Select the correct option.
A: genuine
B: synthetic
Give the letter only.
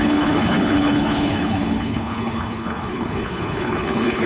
B